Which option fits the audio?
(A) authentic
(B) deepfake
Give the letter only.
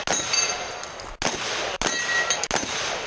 A